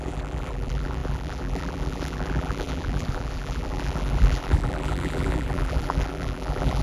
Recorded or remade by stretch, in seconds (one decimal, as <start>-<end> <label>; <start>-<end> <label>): 0.0-6.8 remade

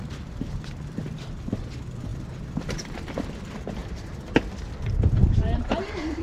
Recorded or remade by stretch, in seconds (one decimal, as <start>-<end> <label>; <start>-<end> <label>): 0.0-3.8 remade; 3.8-4.8 recorded; 4.8-6.2 remade

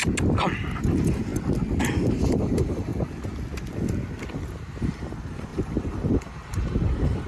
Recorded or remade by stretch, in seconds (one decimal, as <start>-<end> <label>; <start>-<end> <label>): 0.0-0.8 recorded; 0.8-1.3 remade; 1.3-2.1 recorded; 2.1-2.9 remade; 2.9-4.8 recorded; 4.8-7.3 remade

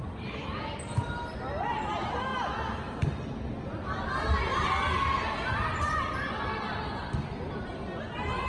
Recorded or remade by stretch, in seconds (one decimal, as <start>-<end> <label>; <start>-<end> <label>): 0.0-8.5 recorded

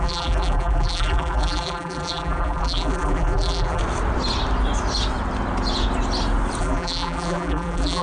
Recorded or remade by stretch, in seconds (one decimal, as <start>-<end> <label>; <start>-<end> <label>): 0.0-3.8 remade; 3.8-6.6 recorded; 6.6-8.0 remade

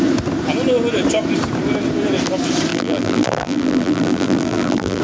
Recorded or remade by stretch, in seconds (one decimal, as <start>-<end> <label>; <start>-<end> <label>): 0.0-2.7 recorded; 2.7-5.0 remade

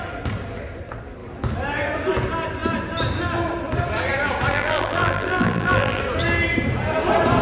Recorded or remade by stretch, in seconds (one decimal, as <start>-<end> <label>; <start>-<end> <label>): 0.0-4.5 recorded; 4.5-6.0 remade; 6.0-7.4 recorded

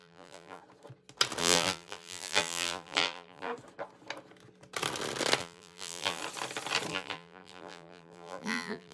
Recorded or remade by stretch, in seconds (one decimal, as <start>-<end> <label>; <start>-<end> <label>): 0.0-0.6 remade; 0.6-1.4 recorded; 1.4-3.5 remade; 3.5-5.4 recorded; 5.4-6.2 remade; 6.2-6.9 recorded; 6.9-8.9 remade